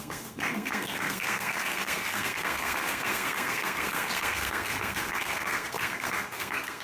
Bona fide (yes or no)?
no